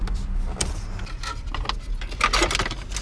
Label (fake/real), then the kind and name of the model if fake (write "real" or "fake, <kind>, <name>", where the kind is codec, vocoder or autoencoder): real